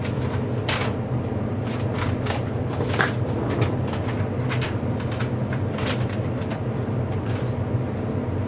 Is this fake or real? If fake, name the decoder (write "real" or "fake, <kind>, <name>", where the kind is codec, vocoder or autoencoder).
real